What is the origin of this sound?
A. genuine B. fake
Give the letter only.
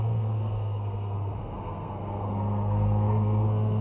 B